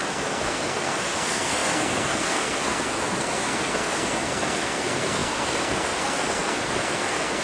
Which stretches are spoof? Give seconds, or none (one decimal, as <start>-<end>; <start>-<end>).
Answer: 0.0-7.4